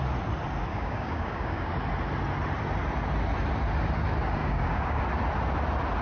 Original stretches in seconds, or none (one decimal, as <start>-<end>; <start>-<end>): 0.0-0.7; 1.7-4.4; 5.0-6.0